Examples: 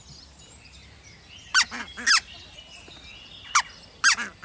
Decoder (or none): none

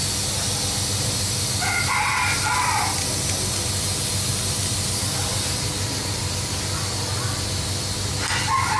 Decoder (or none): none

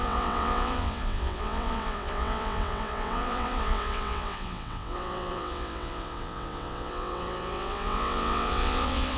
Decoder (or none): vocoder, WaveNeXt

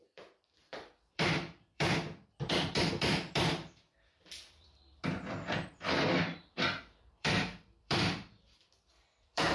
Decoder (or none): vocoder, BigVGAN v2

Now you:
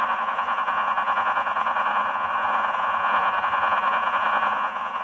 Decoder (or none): vocoder, Vocos